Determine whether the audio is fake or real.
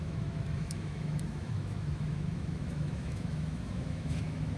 fake